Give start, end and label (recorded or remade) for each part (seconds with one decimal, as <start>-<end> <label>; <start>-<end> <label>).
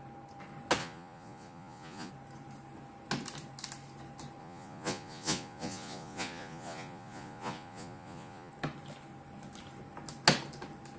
0.0-0.8 recorded; 0.8-2.1 remade; 2.1-4.4 recorded; 4.4-8.5 remade; 8.5-11.0 recorded